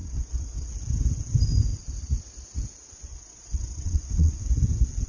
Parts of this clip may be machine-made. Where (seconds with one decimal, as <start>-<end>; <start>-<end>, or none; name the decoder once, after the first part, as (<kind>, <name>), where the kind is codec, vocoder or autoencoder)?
0.0-0.7 (vocoder, Vocos); 3.1-4.4